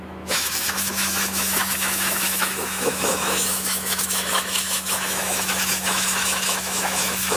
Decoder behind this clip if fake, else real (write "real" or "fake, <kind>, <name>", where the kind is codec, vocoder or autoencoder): fake, autoencoder, DAC-VAE